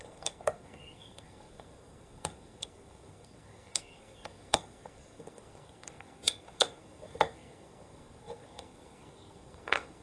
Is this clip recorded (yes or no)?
no